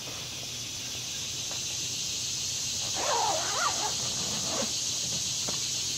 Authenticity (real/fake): real